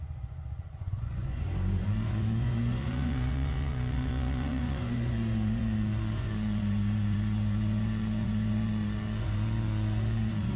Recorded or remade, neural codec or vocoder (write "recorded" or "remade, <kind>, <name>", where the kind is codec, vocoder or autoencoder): remade, vocoder, Vocos